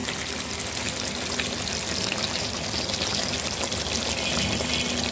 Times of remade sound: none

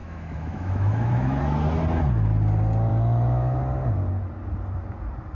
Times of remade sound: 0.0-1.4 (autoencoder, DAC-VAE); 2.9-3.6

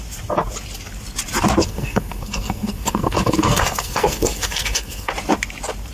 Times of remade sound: 1.6-5.1 (codec, SNAC)

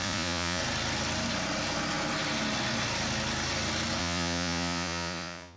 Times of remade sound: 0.0-0.6 (vocoder, Vocos); 4.0-5.6